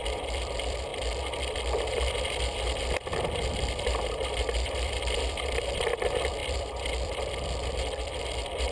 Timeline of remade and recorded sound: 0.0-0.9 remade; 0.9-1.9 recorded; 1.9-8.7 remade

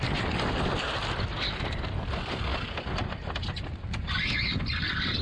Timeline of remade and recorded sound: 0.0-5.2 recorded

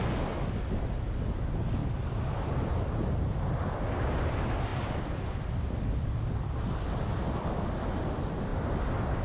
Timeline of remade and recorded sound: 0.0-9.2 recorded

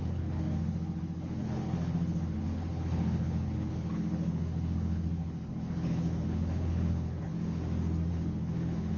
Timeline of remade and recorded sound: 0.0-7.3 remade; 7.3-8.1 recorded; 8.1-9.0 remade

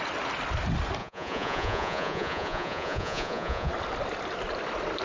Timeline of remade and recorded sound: 0.0-1.0 recorded; 1.0-3.7 remade; 3.7-5.0 recorded

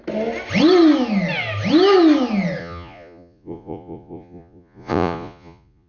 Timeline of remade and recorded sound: 0.0-2.6 recorded; 2.6-5.9 remade

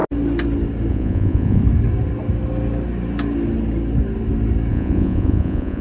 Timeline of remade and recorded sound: 0.0-0.9 recorded; 0.9-1.6 remade; 1.6-4.7 recorded; 4.7-5.8 remade